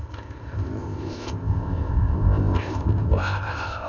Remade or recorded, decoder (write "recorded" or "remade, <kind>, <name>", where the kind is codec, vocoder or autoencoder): remade, codec, ZipCodec